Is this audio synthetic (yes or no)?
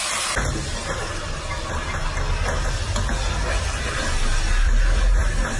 no